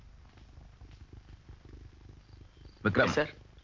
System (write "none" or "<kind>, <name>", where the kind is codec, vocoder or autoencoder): none